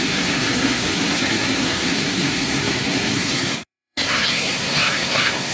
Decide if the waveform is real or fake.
fake